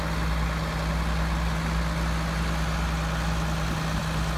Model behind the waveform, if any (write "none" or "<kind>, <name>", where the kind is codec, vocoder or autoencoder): none